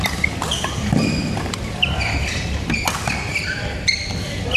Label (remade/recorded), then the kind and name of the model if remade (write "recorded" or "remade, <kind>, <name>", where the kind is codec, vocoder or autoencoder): remade, vocoder, BigVGAN v2